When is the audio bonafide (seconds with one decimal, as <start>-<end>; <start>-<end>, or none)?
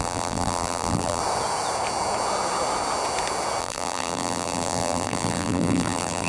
1.2-3.6